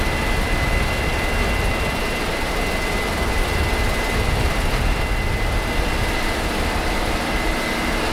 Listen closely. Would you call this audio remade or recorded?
recorded